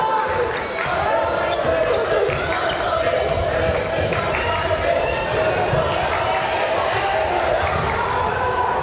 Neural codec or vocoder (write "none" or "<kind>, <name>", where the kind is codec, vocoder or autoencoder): none